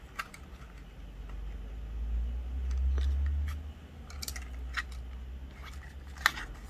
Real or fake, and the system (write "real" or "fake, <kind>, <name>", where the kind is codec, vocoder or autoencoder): real